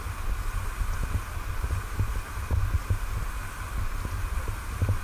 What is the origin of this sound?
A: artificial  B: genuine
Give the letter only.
B